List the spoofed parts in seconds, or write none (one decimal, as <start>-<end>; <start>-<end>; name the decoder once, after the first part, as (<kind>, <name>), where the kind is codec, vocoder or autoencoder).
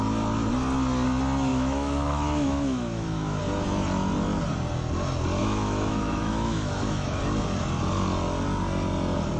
1.5-3.4 (autoencoder, DAC-VAE); 5.4-7.2